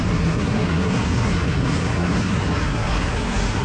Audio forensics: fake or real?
fake